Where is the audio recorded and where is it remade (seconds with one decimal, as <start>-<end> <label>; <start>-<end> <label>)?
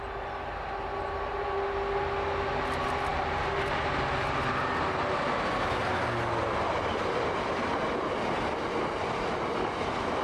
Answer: 0.0-10.2 recorded